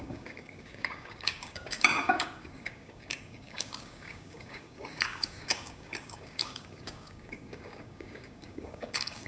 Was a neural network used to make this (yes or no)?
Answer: yes